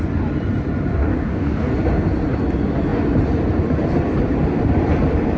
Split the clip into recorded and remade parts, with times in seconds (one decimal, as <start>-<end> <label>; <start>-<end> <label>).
0.0-1.0 recorded; 1.0-1.7 remade; 1.7-5.4 recorded